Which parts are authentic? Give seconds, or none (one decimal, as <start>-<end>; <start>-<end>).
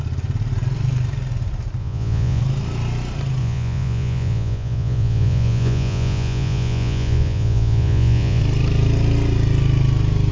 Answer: 0.0-1.8; 2.4-3.4; 8.4-10.3